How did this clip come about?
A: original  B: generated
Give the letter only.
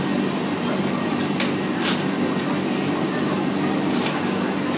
A